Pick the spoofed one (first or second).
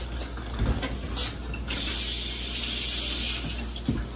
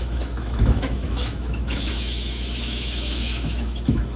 second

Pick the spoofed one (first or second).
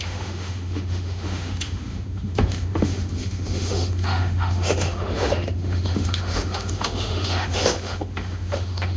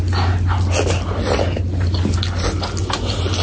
first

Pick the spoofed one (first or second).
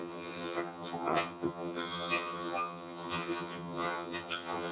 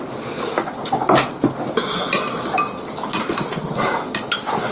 first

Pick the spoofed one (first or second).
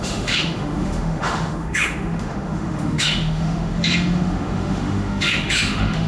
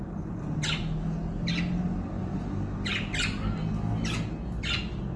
first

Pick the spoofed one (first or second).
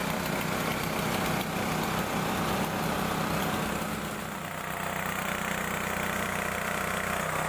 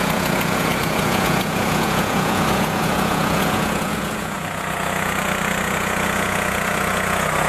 second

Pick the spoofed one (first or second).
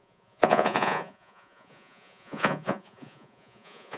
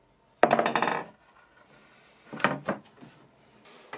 first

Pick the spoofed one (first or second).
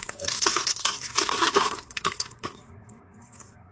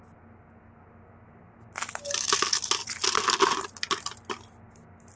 first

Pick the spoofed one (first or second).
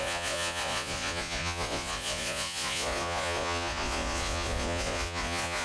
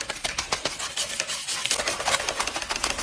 first